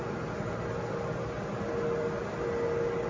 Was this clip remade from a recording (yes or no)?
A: no